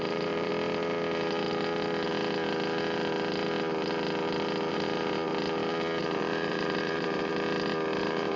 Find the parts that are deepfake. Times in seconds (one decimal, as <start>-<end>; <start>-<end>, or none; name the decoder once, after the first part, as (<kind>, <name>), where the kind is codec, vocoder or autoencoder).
0.0-0.5 (vocoder, BigVGAN v2); 4.7-5.3; 6.0-7.3; 8.0-8.4